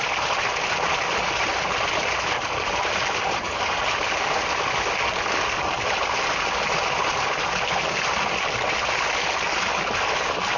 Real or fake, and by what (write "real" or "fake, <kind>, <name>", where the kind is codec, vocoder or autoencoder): real